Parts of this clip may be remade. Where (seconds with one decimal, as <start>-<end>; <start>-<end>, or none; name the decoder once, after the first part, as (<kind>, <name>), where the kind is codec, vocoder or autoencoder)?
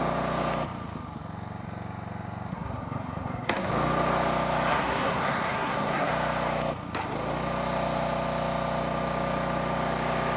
2.5-3.7 (codec, SNAC); 4.7-6.1